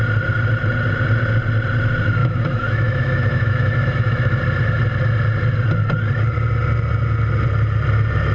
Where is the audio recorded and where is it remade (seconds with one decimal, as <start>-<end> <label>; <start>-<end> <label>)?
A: 0.0-2.2 recorded; 2.2-4.4 remade; 4.4-8.3 recorded